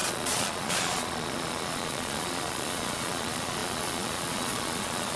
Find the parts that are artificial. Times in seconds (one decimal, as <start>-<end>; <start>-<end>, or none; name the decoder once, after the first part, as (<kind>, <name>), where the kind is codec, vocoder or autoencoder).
0.0-5.2 (vocoder, Vocos)